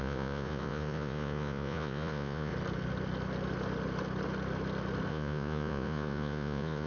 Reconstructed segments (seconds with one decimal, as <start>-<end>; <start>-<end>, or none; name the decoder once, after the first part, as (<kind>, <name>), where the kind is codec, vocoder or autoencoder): 0.0-2.5 (vocoder, Vocos); 5.1-6.9